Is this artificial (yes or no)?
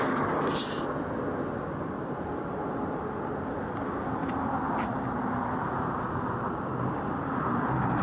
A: no